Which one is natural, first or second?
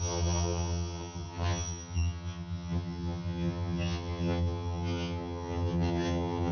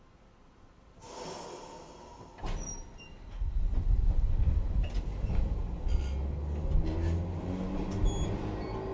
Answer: second